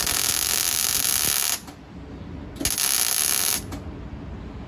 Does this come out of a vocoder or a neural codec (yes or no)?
no